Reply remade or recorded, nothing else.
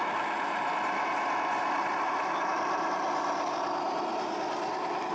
recorded